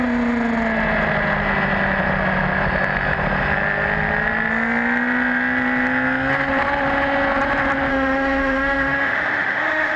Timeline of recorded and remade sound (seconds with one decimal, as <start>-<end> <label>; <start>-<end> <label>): 0.0-7.9 recorded; 7.9-10.0 remade